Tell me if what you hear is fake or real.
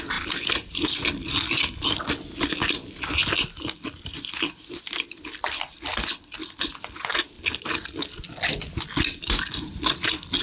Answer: real